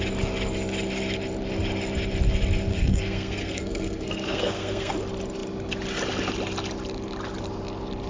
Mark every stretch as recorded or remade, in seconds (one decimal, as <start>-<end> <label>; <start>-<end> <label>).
0.0-2.7 recorded; 2.7-4.9 remade; 4.9-8.1 recorded